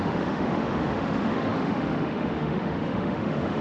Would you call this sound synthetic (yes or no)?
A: yes